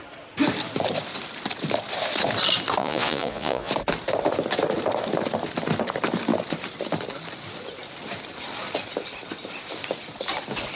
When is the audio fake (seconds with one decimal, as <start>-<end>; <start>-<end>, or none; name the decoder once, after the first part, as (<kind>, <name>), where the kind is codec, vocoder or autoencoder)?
2.8-3.7 (vocoder, Vocos)